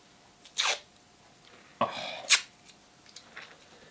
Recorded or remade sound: recorded